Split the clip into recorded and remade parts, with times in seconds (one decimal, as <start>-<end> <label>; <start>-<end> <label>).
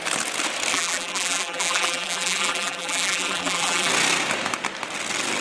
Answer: 0.0-0.7 recorded; 0.7-3.9 remade; 3.9-5.4 recorded